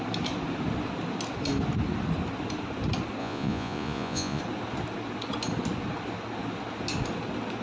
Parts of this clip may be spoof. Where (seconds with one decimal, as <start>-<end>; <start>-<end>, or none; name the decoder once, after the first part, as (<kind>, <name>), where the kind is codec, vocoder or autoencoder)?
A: 3.2-4.4 (vocoder, Vocos)